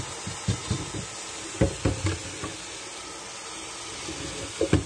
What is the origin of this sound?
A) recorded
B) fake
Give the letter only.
A